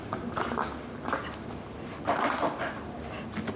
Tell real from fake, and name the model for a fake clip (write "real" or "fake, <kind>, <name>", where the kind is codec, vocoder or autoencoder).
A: real